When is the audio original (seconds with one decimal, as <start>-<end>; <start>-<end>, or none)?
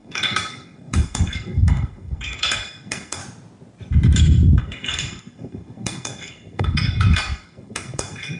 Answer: 3.2-4.6